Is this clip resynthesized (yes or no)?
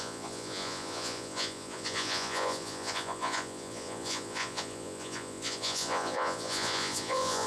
yes